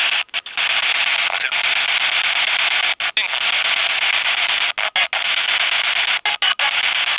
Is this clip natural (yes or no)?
yes